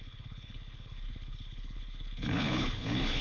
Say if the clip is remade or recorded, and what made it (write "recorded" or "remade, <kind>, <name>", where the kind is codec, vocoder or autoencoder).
remade, codec, HILCodec